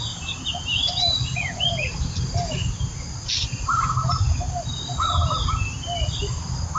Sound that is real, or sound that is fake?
real